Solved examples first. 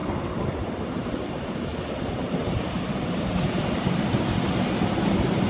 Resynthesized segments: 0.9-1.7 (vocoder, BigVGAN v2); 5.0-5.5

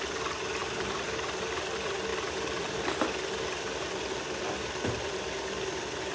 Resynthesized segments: none

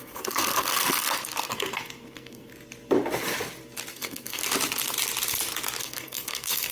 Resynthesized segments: 0.0-2.5 (codec, SNAC); 3.9-4.4; 5.8-6.7